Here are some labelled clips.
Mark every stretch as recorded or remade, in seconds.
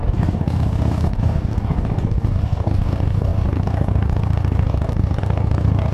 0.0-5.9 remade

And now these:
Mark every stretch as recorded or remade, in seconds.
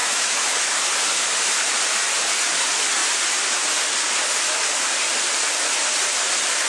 0.0-0.7 remade; 0.7-6.7 recorded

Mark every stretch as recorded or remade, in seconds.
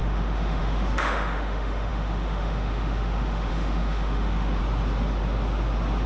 0.0-4.6 remade; 4.6-6.1 recorded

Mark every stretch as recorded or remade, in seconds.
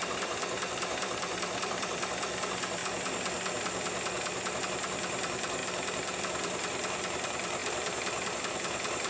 0.0-2.8 remade; 2.8-4.6 recorded; 4.6-9.1 remade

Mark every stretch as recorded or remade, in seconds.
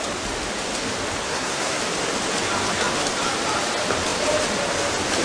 0.0-1.2 recorded; 1.2-1.8 remade; 1.8-5.2 recorded